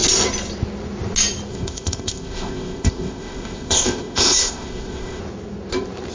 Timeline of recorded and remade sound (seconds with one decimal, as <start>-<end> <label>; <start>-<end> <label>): 0.0-1.5 recorded; 1.5-5.2 remade; 5.2-6.1 recorded